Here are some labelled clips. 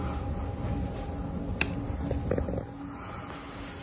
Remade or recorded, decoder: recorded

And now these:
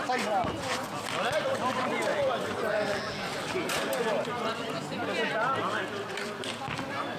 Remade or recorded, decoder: recorded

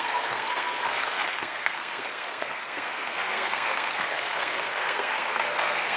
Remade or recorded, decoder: remade, codec, SNAC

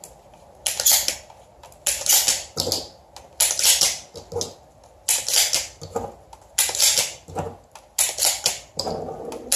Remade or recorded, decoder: recorded